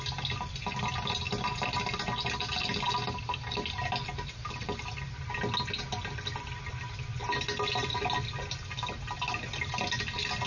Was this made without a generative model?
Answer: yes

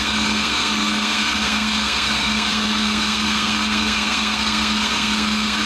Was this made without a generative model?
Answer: no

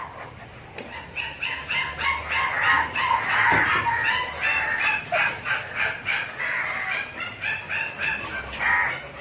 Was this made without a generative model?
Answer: yes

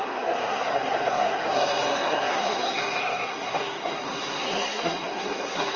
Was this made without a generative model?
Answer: no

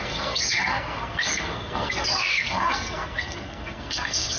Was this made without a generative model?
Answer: no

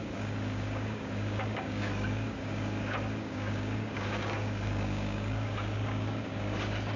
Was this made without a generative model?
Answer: no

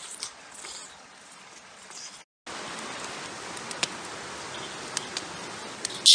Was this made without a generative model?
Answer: yes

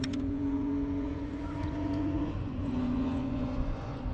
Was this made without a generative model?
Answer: no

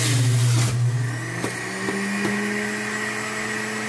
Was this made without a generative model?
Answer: yes